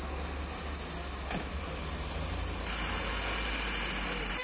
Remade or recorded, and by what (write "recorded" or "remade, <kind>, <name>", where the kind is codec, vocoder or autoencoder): recorded